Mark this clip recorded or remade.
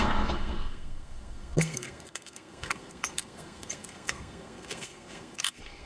remade